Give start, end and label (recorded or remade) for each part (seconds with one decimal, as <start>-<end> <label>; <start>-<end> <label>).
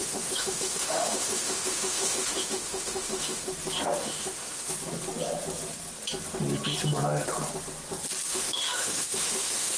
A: 0.0-3.5 remade; 3.5-4.0 recorded; 4.0-4.7 remade; 4.7-8.3 recorded; 8.3-9.8 remade